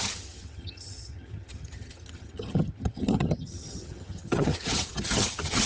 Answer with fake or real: fake